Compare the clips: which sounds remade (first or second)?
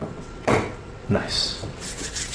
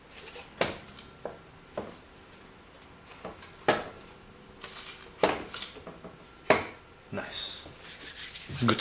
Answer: first